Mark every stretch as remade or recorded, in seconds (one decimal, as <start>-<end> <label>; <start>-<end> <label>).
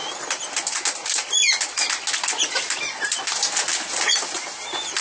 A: 0.0-5.0 recorded